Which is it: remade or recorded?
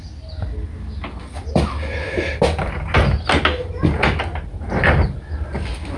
recorded